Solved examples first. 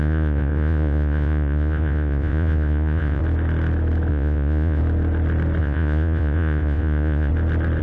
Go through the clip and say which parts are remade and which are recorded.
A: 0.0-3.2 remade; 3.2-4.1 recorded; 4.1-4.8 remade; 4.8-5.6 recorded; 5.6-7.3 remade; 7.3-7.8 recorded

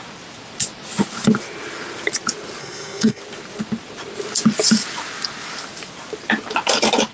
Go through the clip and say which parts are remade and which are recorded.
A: 0.0-2.6 recorded; 2.6-3.2 remade; 3.2-7.1 recorded